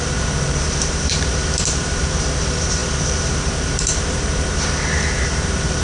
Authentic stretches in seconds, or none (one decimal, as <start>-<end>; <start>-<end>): none